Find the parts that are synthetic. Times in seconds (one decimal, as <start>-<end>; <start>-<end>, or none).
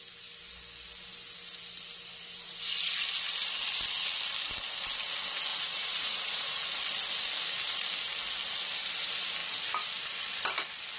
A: 5.5-6.7